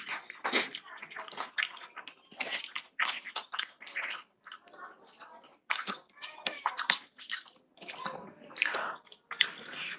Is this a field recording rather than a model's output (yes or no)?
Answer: yes